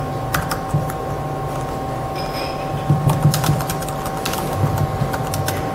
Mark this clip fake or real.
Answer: real